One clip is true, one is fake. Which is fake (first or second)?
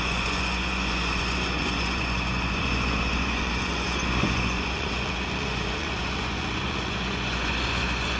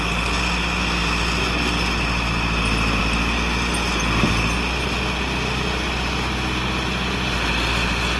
first